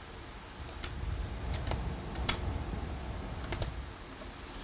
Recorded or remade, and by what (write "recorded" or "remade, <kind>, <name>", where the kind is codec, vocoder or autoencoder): recorded